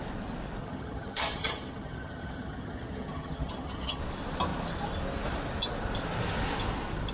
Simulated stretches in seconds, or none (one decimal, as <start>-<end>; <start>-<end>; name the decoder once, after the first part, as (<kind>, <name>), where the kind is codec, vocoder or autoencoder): 0.6-4.0 (vocoder, HiFi-GAN)